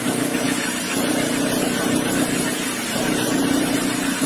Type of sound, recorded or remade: recorded